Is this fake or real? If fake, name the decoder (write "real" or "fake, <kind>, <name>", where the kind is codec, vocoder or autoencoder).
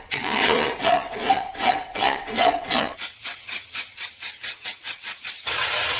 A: fake, vocoder, WaveNeXt